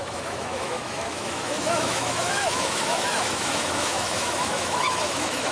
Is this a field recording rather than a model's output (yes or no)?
no